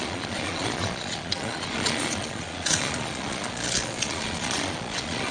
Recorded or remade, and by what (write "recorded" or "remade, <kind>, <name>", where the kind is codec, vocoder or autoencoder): remade, vocoder, Vocos